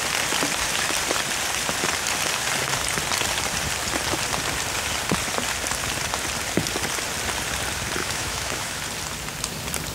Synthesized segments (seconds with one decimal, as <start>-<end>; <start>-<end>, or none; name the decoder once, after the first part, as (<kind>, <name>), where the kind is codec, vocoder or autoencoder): 8.0-8.8 (autoencoder, DAC-VAE)